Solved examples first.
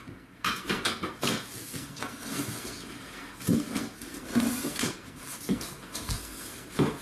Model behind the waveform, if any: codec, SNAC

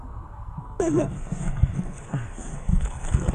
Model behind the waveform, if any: codec, SNAC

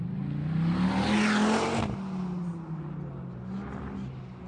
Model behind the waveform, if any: none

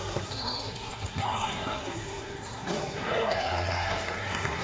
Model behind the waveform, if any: codec, SNAC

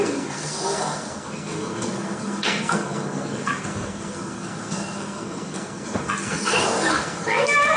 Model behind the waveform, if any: codec, SNAC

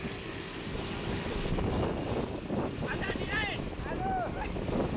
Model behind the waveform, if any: none